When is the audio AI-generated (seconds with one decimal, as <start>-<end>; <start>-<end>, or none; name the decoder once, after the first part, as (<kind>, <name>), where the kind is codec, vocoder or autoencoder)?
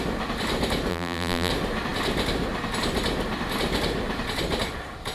0.9-1.5 (vocoder, BigVGAN v2)